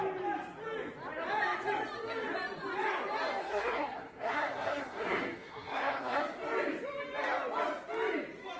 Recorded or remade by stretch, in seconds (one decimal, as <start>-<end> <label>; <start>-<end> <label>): 0.0-3.4 recorded; 3.4-6.2 remade; 6.2-8.6 recorded